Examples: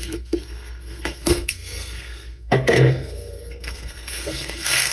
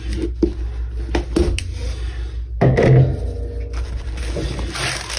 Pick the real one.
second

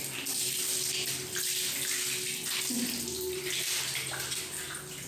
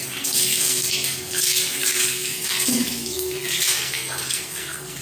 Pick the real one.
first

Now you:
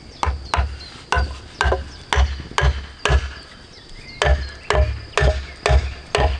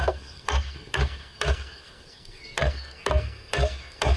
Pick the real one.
first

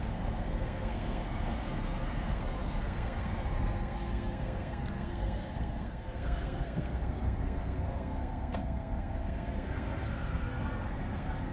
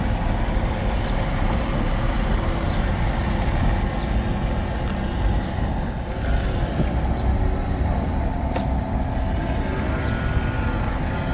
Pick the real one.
second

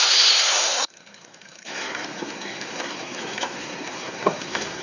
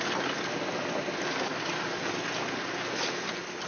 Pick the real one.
second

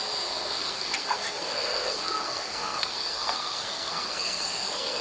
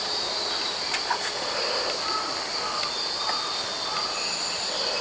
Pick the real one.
second